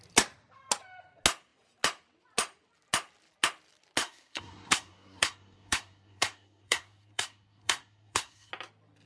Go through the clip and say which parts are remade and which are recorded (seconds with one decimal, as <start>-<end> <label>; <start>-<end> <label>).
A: 0.0-4.0 recorded; 4.0-8.5 remade; 8.5-9.1 recorded

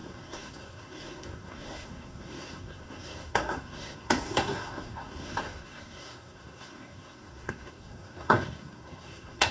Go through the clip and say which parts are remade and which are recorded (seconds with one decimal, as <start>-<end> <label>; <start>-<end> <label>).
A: 0.0-9.5 remade

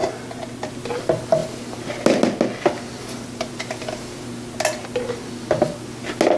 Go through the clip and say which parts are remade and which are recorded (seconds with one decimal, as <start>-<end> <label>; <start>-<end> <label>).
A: 0.0-6.4 recorded

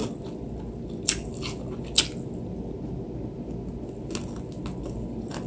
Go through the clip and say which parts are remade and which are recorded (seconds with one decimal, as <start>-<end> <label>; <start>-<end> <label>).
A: 0.0-5.5 recorded

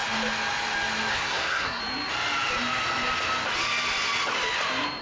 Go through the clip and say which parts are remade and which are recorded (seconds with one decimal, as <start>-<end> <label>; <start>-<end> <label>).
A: 0.0-1.1 recorded; 1.1-1.8 remade; 1.8-5.0 recorded

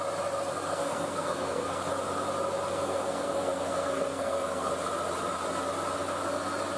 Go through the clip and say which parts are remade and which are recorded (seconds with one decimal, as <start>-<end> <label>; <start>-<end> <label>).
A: 0.0-0.7 recorded; 0.7-1.8 remade; 1.8-2.7 recorded; 2.7-4.7 remade; 4.7-6.8 recorded

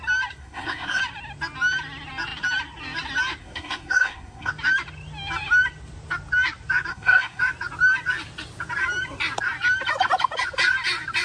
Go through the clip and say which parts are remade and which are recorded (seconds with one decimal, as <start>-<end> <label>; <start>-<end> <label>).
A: 0.0-0.4 recorded; 0.4-1.0 remade; 1.0-3.4 recorded; 3.4-4.5 remade; 4.5-6.9 recorded; 6.9-7.4 remade; 7.4-11.2 recorded